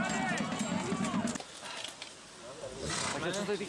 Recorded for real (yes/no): yes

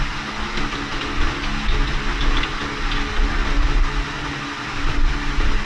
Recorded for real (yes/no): yes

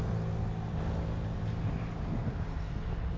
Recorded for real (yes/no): yes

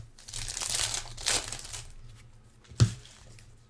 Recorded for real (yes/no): yes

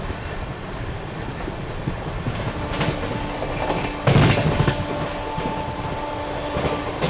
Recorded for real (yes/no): yes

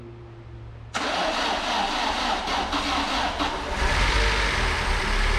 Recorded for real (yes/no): yes